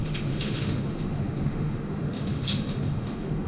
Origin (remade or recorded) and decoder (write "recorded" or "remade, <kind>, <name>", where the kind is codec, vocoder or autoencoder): remade, autoencoder, DAC-VAE